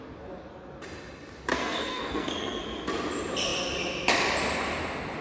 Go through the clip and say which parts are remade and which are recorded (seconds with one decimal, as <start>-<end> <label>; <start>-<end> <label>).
0.0-1.5 recorded; 1.5-2.6 remade; 2.6-5.2 recorded